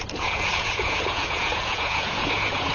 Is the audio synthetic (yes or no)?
yes